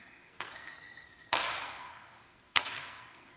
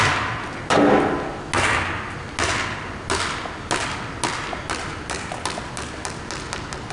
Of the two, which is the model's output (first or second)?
first